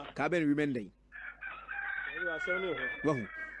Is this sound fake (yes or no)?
no